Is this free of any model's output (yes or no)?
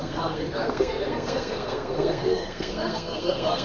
no